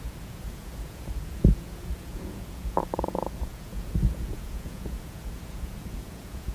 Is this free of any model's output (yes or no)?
no